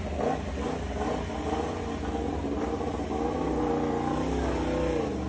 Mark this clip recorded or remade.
recorded